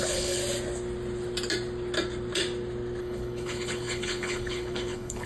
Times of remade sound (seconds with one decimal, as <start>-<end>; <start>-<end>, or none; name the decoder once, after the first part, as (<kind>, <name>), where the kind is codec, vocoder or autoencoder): 0.0-0.4 (codec, HILCodec); 3.0-5.3